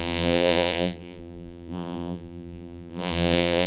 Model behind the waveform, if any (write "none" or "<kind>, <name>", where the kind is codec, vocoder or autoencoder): vocoder, BigVGAN v2